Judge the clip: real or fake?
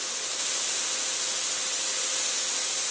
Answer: real